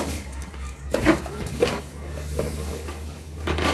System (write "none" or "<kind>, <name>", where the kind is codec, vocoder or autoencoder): codec, DAC